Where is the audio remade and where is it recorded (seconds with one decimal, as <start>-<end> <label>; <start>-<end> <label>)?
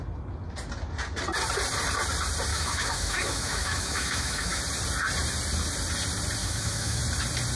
0.0-2.5 recorded; 2.5-4.6 remade; 4.6-6.4 recorded; 6.4-7.0 remade; 7.0-7.6 recorded